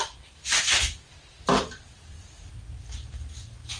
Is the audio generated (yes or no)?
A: no